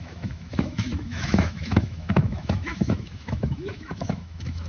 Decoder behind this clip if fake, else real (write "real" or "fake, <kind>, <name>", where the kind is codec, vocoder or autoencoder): fake, autoencoder, DAC-VAE